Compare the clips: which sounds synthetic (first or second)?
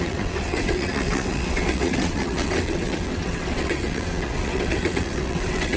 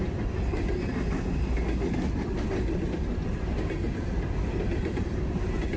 first